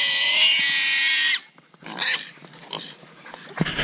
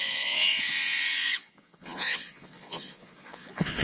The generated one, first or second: second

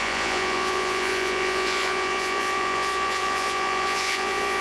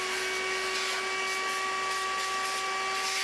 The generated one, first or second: first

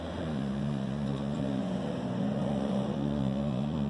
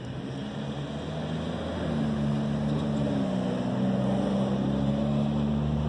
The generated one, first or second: first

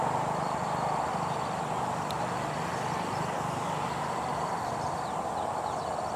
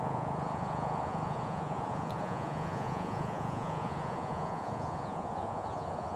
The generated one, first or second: second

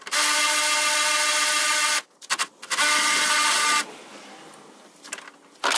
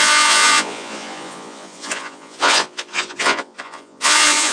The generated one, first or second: second